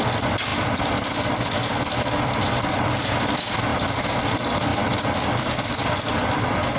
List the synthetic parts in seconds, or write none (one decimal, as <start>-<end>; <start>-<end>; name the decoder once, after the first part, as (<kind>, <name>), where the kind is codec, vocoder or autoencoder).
0.0-3.7 (vocoder, BigVGAN v2); 4.3-4.7; 5.4-6.8